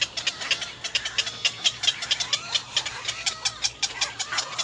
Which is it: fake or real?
real